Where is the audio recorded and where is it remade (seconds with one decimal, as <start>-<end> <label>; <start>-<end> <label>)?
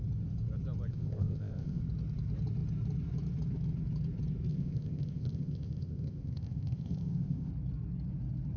0.0-0.9 recorded; 0.9-1.8 remade; 1.8-4.5 recorded; 4.5-7.5 remade; 7.5-8.6 recorded